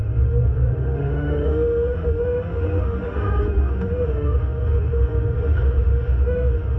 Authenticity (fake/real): fake